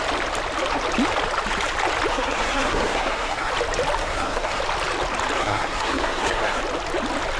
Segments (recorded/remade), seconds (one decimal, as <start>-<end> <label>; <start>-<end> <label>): 0.0-2.1 recorded; 2.1-3.5 remade; 3.5-4.0 recorded; 4.0-4.6 remade; 4.6-5.4 recorded; 5.4-6.6 remade; 6.6-7.4 recorded